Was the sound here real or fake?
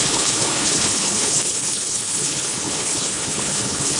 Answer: fake